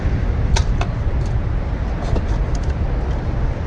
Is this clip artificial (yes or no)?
no